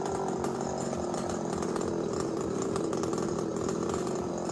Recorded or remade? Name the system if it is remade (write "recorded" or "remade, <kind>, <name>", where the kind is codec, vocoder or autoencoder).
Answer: recorded